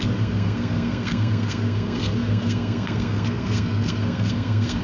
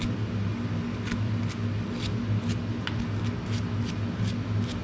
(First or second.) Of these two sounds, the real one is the second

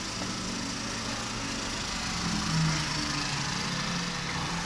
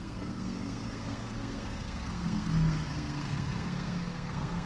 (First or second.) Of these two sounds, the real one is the first